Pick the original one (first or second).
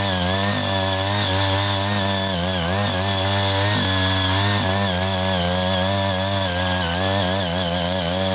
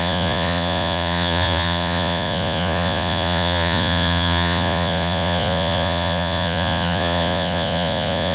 first